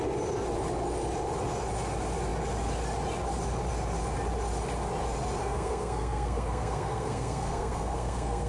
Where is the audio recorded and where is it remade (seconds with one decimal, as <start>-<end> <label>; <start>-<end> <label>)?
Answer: 0.0-5.4 recorded; 5.4-8.5 remade